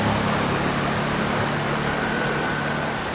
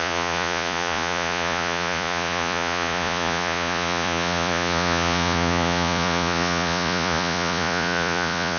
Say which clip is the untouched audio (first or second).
first